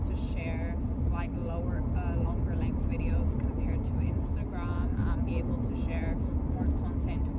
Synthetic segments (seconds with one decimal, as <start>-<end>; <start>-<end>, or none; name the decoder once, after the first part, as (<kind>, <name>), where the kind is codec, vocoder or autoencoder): none